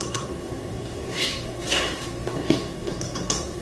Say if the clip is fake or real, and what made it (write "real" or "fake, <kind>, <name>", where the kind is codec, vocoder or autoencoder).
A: fake, codec, SNAC